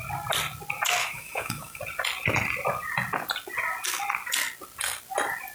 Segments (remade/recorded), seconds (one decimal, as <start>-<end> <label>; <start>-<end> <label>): 0.0-1.0 recorded; 1.0-1.8 remade; 1.8-5.5 recorded